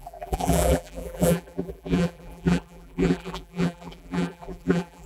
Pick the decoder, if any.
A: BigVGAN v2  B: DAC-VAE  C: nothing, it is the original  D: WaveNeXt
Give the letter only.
A